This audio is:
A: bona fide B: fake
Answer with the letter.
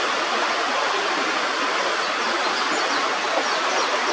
A